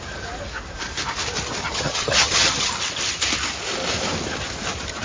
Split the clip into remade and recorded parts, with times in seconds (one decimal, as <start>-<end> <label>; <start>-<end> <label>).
0.0-1.6 recorded; 1.6-2.7 remade; 2.7-5.0 recorded